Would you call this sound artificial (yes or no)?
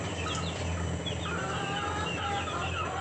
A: no